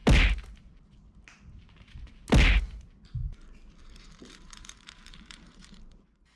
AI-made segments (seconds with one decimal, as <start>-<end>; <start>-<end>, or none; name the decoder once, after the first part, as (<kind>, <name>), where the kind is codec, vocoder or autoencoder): 3.8-6.4 (vocoder, BigVGAN v2)

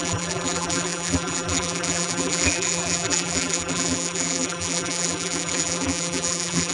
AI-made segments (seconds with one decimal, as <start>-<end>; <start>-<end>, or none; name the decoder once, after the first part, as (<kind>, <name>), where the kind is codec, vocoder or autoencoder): 0.0-6.7 (vocoder, BigVGAN v2)

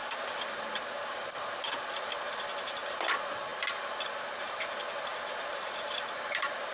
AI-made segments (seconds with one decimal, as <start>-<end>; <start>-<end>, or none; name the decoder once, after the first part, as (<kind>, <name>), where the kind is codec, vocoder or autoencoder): 0.0-0.7 (vocoder, BigVGAN v2); 5.1-6.7

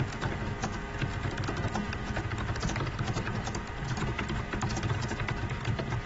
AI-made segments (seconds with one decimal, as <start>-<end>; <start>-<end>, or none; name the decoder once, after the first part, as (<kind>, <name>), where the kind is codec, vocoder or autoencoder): 2.6-4.7 (vocoder, BigVGAN v2); 5.4-6.1